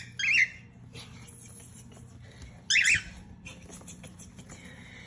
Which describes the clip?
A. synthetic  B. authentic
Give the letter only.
B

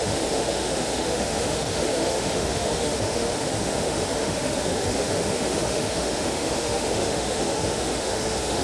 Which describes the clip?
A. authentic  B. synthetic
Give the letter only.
B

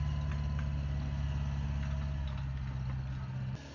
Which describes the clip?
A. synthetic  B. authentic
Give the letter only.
B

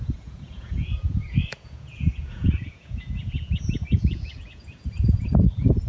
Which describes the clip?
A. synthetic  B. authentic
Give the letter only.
A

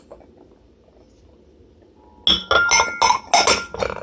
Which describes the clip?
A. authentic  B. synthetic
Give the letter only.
A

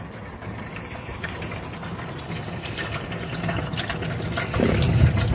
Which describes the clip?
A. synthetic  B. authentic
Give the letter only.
B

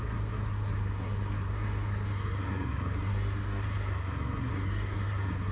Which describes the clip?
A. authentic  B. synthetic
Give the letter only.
B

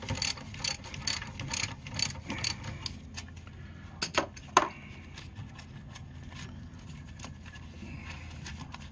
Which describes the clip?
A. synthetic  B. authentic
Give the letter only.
B